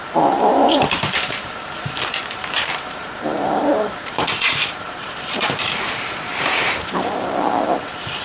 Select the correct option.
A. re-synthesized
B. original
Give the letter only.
A